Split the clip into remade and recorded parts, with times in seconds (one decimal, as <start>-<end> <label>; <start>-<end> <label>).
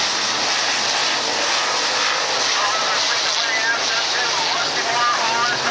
0.0-5.7 recorded